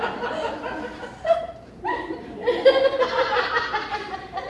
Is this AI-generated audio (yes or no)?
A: yes